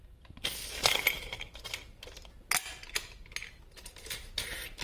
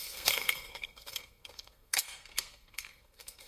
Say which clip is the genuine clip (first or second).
first